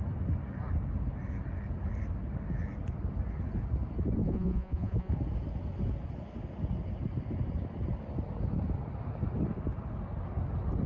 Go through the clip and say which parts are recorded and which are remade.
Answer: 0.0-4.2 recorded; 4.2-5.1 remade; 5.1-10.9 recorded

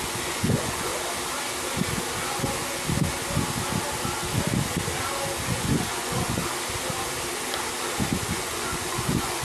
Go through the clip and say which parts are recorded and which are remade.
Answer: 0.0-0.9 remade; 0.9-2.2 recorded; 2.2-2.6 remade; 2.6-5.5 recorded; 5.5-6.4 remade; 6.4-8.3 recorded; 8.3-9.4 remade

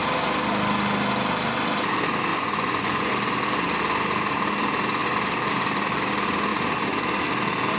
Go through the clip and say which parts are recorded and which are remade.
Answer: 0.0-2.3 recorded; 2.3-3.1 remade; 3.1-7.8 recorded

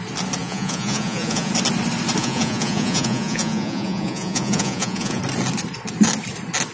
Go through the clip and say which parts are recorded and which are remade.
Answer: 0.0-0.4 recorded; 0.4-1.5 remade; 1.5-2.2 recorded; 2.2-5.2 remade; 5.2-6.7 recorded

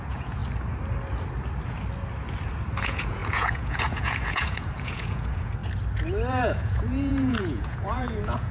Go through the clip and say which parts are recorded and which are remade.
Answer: 0.0-0.4 remade; 0.4-2.8 recorded; 2.8-5.6 remade; 5.6-6.3 recorded; 6.3-8.5 remade

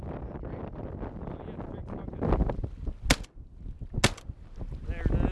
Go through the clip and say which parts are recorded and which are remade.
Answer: 0.0-5.3 recorded

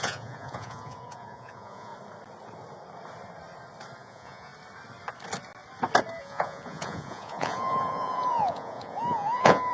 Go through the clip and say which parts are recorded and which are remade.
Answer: 0.0-1.9 remade; 1.9-4.0 recorded; 4.0-4.5 remade; 4.5-6.2 recorded; 6.2-9.7 remade

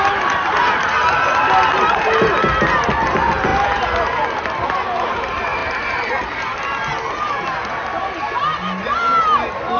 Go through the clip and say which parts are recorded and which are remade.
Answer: 0.0-9.8 recorded